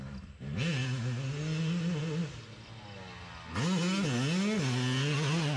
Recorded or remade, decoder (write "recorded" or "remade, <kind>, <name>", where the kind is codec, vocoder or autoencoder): recorded